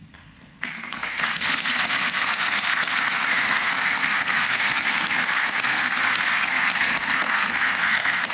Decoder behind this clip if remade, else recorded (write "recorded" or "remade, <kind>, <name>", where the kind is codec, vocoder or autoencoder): remade, codec, SNAC